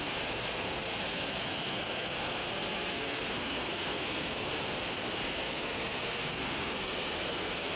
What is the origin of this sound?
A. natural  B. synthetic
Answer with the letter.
B